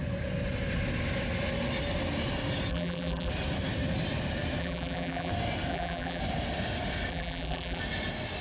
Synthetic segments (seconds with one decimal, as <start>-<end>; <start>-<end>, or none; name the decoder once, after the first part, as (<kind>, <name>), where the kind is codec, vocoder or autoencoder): 2.7-3.3 (vocoder, BigVGAN v2); 4.6-5.3; 5.7-6.2; 7.1-7.8

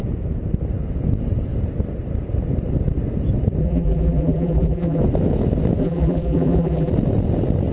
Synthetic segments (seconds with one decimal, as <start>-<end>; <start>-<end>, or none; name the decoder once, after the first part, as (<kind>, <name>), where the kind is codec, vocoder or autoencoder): 3.6-5.0 (vocoder, BigVGAN v2); 5.8-6.9

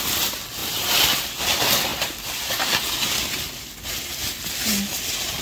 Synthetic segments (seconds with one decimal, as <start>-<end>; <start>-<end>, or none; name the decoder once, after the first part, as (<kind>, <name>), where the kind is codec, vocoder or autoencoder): 0.6-1.4 (vocoder, BigVGAN v2)

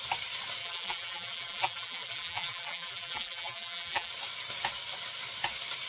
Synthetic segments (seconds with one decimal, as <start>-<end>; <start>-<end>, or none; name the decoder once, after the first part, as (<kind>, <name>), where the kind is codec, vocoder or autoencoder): 0.6-4.1 (vocoder, BigVGAN v2)